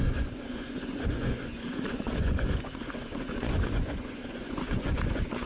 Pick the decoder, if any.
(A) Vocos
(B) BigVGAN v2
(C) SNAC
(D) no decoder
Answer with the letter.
A